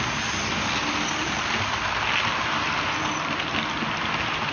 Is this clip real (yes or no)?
yes